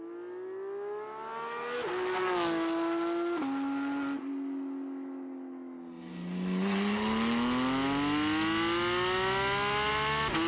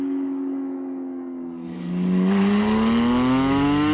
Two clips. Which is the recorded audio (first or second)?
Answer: first